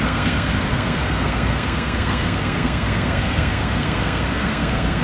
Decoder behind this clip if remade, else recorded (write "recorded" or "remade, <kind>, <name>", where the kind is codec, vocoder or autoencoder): remade, codec, SNAC